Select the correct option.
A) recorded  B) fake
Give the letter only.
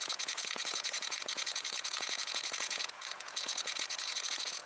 B